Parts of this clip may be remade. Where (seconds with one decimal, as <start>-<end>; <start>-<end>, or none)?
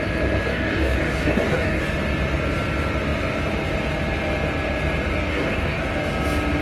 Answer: 0.5-1.8; 5.3-5.8